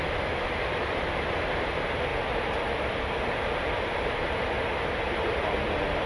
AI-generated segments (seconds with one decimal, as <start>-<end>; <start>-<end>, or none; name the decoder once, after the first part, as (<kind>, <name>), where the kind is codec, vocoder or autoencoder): none